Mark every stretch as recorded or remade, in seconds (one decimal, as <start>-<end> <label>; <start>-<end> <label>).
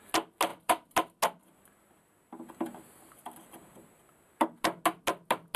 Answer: 0.0-5.6 recorded